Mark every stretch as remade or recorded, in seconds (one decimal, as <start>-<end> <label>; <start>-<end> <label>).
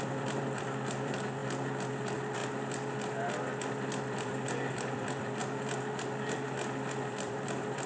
0.0-1.4 remade; 1.4-1.9 recorded; 1.9-2.4 remade; 2.4-4.1 recorded; 4.1-5.4 remade; 5.4-7.1 recorded; 7.1-7.9 remade